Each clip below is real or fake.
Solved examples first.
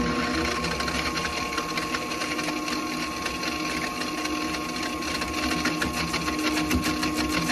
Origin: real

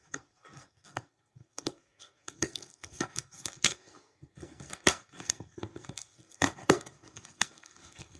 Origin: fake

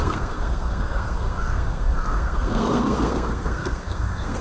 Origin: fake